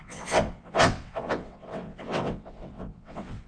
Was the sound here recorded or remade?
remade